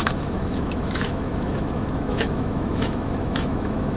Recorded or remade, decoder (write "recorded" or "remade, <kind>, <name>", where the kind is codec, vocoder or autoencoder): remade, autoencoder, DAC-VAE